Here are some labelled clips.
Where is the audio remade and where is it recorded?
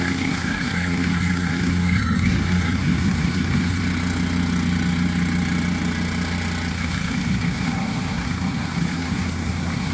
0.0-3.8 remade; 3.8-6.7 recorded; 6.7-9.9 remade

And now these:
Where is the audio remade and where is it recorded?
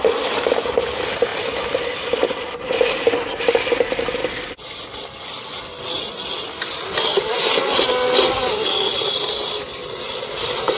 0.0-10.8 recorded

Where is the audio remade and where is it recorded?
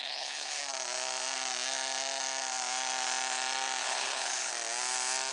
0.0-0.6 remade; 0.6-3.8 recorded; 3.8-4.5 remade; 4.5-5.3 recorded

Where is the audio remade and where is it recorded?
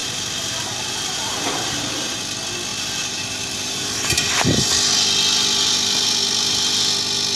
0.0-2.2 remade; 2.2-2.7 recorded; 2.7-4.7 remade; 4.7-7.4 recorded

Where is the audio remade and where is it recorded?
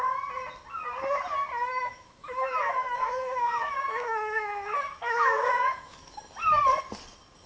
0.0-1.7 recorded; 1.7-6.2 remade; 6.2-7.5 recorded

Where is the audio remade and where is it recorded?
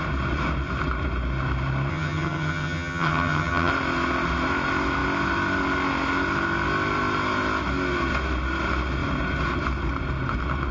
0.0-1.9 recorded; 1.9-3.7 remade; 3.7-10.7 recorded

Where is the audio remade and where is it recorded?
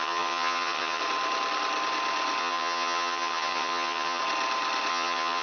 0.0-1.0 remade; 1.0-2.4 recorded; 2.4-4.2 remade; 4.2-4.9 recorded; 4.9-5.4 remade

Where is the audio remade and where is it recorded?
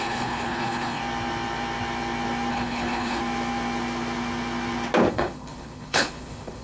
0.0-1.0 remade; 1.0-2.5 recorded; 2.5-3.2 remade; 3.2-5.1 recorded; 5.1-6.6 remade